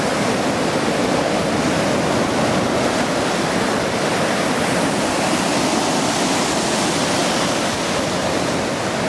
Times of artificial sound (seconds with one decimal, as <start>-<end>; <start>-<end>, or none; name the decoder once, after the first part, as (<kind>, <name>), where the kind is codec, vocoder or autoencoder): none